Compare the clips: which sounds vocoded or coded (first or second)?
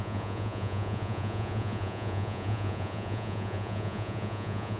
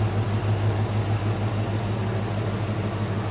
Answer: first